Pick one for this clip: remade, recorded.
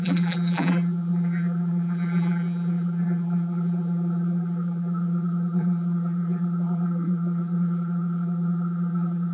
remade